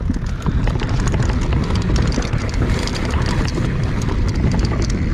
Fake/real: real